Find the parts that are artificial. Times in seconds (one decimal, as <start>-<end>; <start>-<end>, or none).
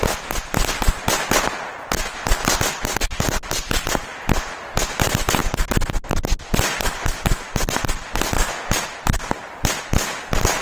none